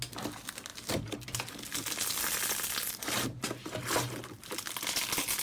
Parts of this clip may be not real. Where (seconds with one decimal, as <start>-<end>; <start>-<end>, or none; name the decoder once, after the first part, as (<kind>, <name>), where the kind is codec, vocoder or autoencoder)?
none